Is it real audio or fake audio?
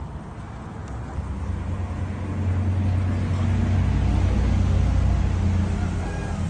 real